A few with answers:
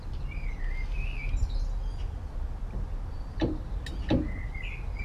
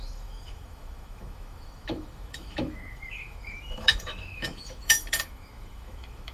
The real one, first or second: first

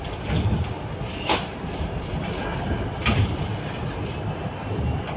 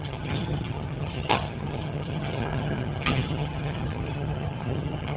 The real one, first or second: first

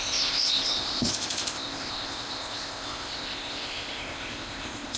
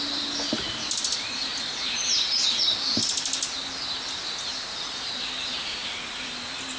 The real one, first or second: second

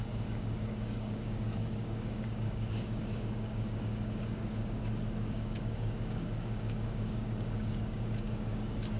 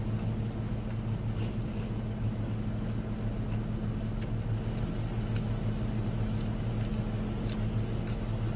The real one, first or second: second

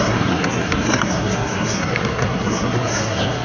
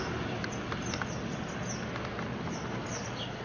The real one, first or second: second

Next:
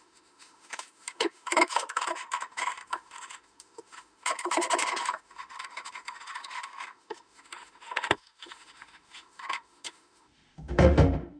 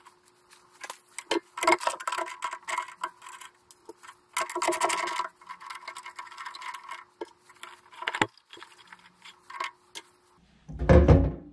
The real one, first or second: second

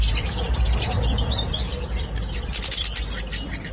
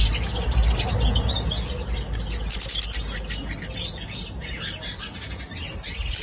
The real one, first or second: second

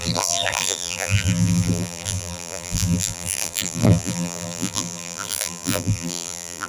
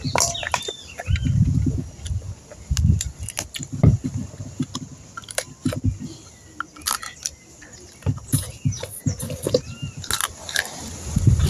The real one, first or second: second